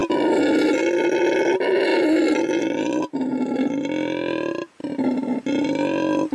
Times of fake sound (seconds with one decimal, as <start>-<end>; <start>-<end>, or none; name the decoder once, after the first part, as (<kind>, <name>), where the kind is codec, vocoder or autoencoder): none